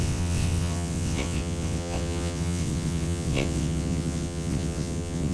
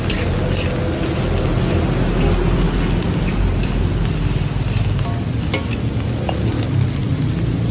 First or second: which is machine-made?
first